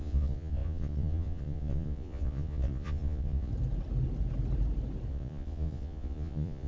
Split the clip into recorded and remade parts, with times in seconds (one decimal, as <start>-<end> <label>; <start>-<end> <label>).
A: 0.0-3.5 remade; 3.5-5.1 recorded; 5.1-6.7 remade